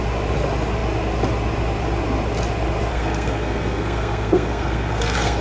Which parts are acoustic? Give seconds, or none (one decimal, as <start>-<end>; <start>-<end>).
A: 0.0-2.9